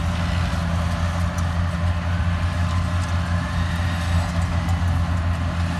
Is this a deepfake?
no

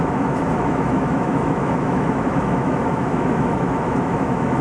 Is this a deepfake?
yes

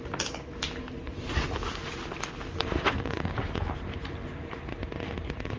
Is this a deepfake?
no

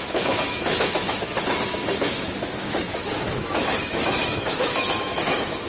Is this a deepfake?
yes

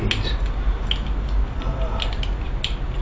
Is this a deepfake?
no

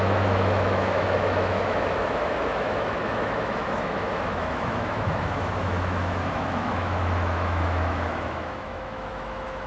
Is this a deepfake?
yes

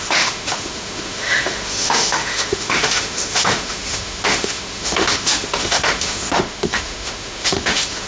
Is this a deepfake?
yes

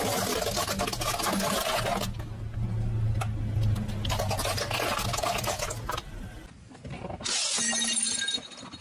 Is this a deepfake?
no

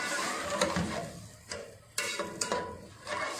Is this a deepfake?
no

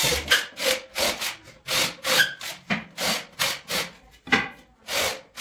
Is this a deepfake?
no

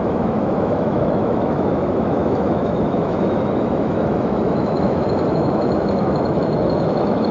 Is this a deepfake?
yes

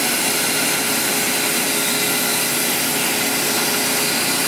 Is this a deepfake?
no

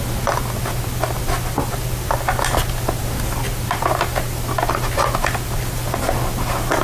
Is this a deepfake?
no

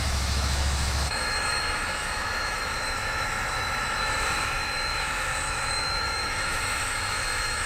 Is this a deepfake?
yes